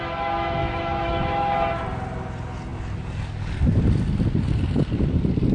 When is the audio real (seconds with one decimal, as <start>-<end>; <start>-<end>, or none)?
0.0-0.6; 1.8-5.5